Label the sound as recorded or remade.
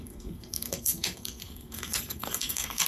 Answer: remade